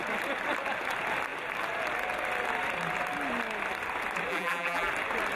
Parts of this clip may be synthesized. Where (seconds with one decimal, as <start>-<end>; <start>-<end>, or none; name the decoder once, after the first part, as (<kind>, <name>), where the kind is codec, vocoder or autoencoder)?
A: 4.3-4.9 (vocoder, BigVGAN v2)